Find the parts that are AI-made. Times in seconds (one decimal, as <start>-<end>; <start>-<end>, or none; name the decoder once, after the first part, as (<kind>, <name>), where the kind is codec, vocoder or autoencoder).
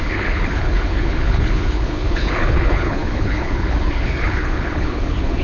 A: 0.0-5.4 (codec, HILCodec)